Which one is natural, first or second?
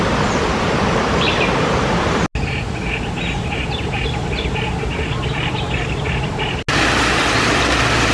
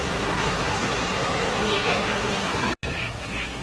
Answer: first